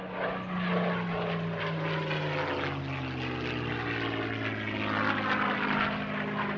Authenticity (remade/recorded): recorded